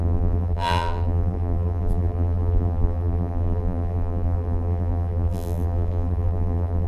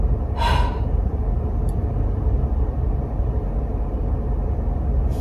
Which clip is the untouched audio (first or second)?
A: second